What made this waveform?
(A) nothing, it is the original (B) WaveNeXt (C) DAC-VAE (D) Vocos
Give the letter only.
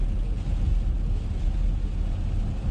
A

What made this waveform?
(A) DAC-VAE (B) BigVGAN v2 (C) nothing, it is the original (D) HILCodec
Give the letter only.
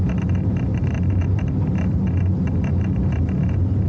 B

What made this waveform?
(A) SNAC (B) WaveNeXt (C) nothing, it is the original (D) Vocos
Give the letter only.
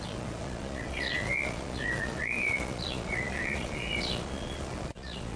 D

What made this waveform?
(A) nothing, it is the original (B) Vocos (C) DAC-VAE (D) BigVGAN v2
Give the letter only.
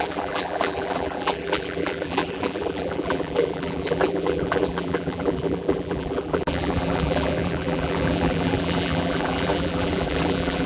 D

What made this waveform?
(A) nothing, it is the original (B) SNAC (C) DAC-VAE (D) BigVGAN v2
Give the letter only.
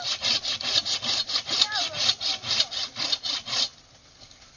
D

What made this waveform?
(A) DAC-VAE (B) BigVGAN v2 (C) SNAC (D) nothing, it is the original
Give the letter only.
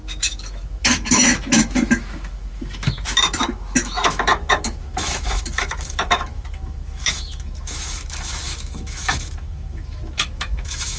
A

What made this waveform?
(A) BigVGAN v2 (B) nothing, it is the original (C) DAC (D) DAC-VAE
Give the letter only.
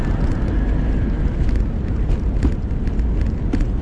B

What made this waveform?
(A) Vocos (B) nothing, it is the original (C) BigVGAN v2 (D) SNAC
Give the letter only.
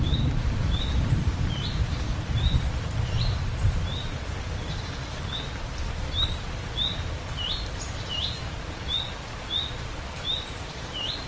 C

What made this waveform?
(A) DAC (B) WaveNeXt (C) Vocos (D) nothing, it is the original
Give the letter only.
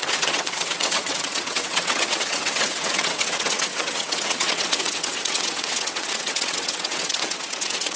B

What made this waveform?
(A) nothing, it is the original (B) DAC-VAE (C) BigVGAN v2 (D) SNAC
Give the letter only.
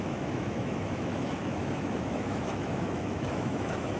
B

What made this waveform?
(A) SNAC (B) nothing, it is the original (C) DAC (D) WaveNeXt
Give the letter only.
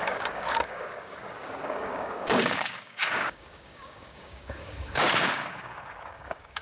C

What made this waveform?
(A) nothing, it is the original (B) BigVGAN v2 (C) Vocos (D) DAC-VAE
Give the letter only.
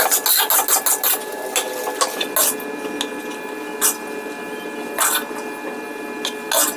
A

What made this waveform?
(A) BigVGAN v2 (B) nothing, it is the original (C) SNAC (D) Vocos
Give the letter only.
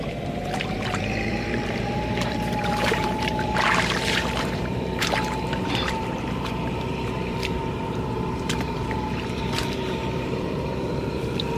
A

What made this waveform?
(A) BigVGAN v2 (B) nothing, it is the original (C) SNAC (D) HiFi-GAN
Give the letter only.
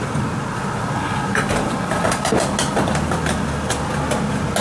B